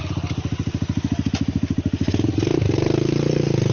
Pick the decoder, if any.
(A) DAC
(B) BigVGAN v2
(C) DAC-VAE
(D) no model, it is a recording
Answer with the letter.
D